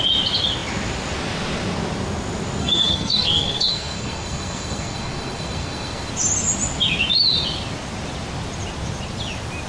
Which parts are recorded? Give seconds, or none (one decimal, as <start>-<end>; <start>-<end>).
0.0-2.6; 6.1-9.7